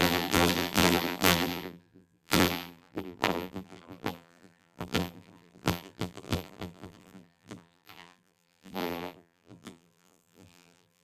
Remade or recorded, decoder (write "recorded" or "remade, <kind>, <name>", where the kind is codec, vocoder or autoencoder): remade, vocoder, BigVGAN v2